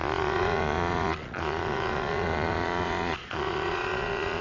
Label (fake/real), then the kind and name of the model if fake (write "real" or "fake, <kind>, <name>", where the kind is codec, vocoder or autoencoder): fake, vocoder, Vocos